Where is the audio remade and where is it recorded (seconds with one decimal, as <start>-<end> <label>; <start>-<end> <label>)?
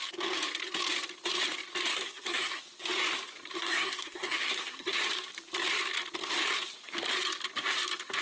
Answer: 0.0-1.9 recorded; 1.9-2.6 remade; 2.6-3.6 recorded; 3.6-5.0 remade; 5.0-8.2 recorded